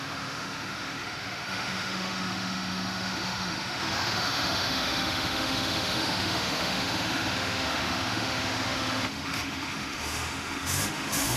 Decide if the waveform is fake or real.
fake